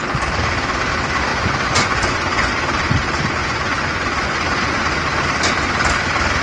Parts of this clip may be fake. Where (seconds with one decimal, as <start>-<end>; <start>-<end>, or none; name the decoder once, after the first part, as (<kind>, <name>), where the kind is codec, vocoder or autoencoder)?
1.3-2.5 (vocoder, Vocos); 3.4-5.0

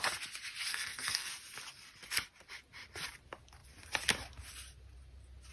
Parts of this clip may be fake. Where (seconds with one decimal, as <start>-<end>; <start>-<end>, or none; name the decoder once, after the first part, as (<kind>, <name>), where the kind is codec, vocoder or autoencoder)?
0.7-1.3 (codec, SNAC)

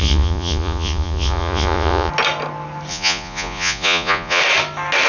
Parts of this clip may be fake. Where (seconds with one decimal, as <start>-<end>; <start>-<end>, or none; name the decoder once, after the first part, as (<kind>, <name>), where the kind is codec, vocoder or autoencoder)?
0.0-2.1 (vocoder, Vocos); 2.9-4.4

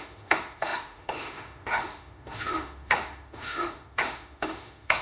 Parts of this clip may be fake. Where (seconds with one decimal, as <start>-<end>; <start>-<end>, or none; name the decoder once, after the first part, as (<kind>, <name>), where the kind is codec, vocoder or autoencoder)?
0.0-5.0 (autoencoder, DAC-VAE)

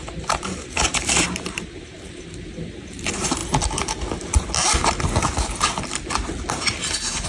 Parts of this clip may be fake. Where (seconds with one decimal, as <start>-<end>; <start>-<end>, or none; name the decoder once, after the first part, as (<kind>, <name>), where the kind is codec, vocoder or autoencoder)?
0.0-3.4 (vocoder, BigVGAN v2); 6.5-7.3